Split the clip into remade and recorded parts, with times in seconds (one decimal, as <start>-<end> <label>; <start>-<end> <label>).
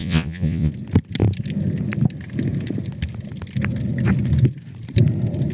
0.0-0.7 remade; 0.7-5.5 recorded